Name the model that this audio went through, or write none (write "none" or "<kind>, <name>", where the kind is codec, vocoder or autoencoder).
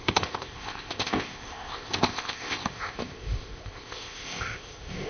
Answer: codec, ZipCodec